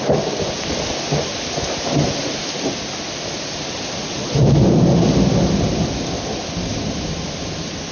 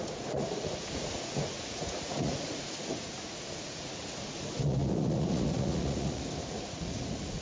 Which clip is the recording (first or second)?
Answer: first